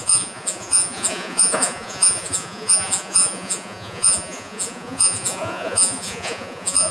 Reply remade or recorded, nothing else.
remade